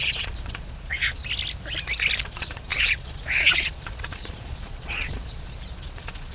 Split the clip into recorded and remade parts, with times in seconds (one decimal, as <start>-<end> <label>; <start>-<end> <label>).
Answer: 0.0-1.2 remade; 1.2-2.3 recorded; 2.3-6.3 remade